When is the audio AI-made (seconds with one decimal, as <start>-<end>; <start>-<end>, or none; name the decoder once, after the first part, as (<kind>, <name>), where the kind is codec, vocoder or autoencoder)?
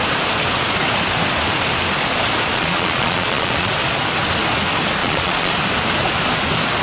2.5-3.7 (vocoder, Vocos); 5.0-5.5